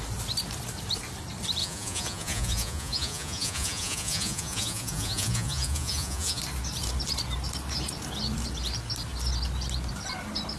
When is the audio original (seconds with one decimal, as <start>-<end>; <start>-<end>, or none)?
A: 0.0-1.6; 6.4-10.6